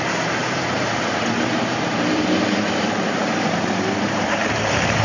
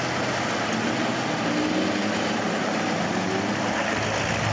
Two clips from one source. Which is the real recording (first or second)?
second